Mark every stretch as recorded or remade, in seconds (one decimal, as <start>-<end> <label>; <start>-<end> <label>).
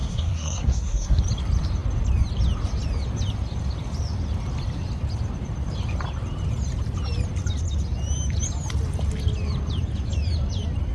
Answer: 0.0-1.2 remade; 1.2-10.9 recorded